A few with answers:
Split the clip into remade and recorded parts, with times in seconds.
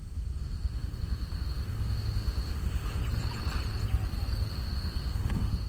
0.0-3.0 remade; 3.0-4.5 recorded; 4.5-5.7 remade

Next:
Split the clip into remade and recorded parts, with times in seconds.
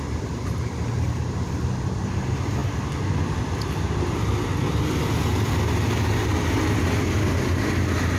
0.0-8.2 recorded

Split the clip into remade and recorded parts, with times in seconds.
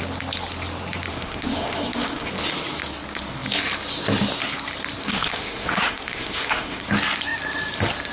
0.0-1.1 recorded; 1.1-2.3 remade; 2.3-5.0 recorded; 5.0-6.8 remade; 6.8-8.1 recorded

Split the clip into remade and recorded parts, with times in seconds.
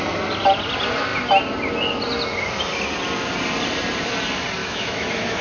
0.0-4.6 recorded; 4.6-5.4 remade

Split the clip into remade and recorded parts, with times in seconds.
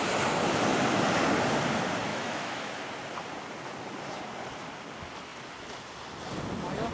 0.0-2.1 recorded; 2.1-2.7 remade; 2.7-6.9 recorded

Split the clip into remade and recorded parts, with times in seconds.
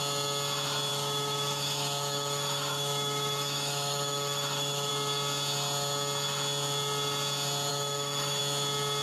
0.0-0.9 recorded; 0.9-4.9 remade; 4.9-7.7 recorded; 7.7-8.4 remade; 8.4-9.0 recorded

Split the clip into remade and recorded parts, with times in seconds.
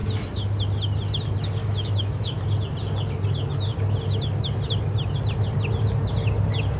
0.0-1.6 recorded; 1.6-2.4 remade; 2.4-6.8 recorded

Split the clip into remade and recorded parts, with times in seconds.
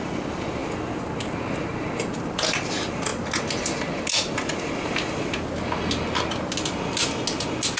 0.0-7.8 recorded